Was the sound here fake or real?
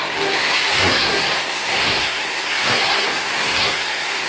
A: fake